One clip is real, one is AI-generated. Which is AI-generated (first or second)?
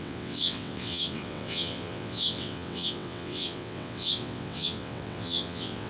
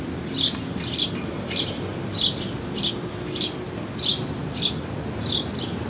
first